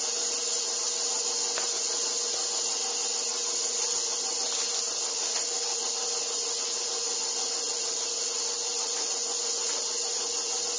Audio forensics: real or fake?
real